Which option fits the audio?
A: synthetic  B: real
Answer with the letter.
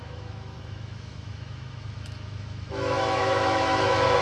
A